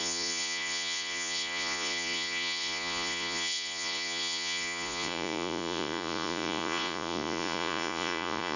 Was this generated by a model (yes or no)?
yes